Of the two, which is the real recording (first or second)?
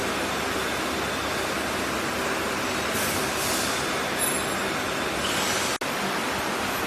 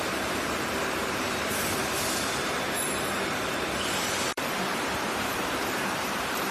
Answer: first